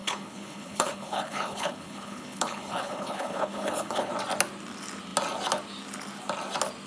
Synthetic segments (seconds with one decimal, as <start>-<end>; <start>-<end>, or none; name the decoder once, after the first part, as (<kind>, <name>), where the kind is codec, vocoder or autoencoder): 0.0-4.1 (codec, HILCodec)